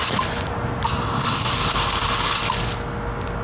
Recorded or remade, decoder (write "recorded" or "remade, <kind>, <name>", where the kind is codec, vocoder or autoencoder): recorded